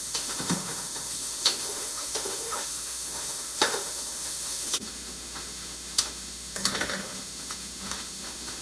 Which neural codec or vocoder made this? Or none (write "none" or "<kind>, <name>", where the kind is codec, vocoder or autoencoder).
autoencoder, DAC-VAE